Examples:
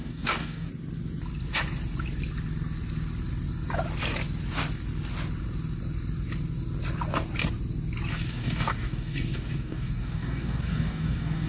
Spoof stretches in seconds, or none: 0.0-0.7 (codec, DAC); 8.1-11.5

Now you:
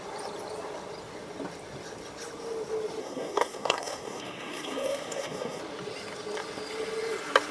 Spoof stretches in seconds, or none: 3.0-5.6 (codec, SNAC)

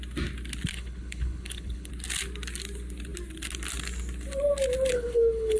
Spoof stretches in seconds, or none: 0.7-1.9 (codec, HILCodec); 4.9-5.6

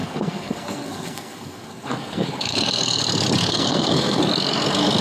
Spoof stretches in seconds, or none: 0.0-3.0 (codec, SNAC); 3.4-4.2

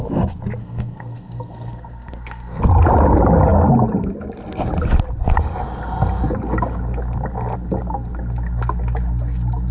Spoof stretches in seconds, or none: 0.6-2.6 (codec, SNAC)